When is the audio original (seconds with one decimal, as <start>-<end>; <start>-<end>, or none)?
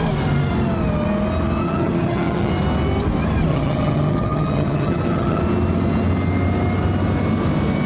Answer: 0.0-1.6; 2.5-3.5; 5.4-7.9